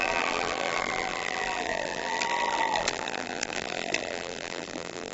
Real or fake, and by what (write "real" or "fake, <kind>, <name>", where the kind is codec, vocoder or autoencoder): fake, vocoder, BigVGAN v2